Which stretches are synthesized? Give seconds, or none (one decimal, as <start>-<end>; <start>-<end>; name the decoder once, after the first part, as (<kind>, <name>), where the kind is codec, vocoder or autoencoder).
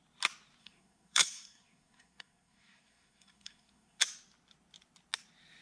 0.6-4.0 (codec, SNAC)